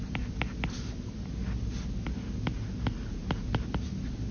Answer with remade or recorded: recorded